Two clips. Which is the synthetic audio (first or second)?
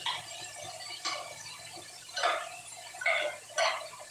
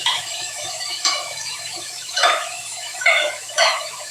second